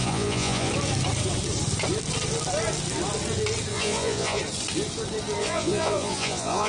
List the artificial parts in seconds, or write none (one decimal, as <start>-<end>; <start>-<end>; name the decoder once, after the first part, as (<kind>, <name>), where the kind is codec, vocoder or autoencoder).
0.0-0.7 (vocoder, Vocos); 3.7-4.4; 5.4-6.7